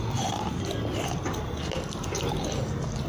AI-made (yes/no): no